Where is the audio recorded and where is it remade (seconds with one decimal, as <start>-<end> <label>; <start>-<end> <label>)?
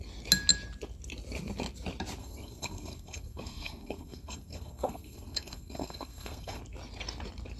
0.0-2.2 recorded; 2.2-6.6 remade; 6.6-7.6 recorded